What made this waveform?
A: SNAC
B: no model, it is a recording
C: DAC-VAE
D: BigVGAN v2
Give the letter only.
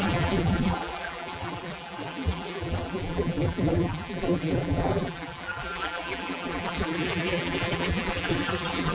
D